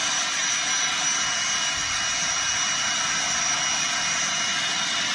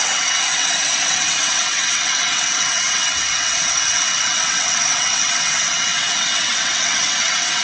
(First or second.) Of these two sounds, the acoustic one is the first